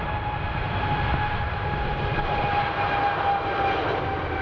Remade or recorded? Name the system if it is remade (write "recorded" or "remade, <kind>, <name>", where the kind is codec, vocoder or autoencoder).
recorded